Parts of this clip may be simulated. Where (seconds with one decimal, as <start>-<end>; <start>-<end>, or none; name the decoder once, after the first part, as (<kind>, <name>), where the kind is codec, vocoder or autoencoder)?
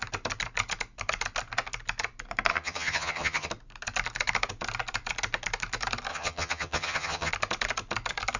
2.5-3.5 (vocoder, HiFi-GAN); 6.1-7.3